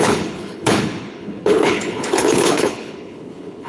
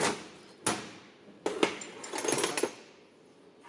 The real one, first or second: second